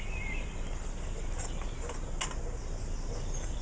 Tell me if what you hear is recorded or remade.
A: recorded